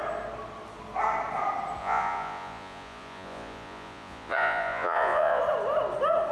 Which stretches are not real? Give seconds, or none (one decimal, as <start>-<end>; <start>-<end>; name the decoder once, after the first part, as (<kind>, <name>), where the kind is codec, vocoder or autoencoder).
1.8-5.4 (vocoder, Vocos)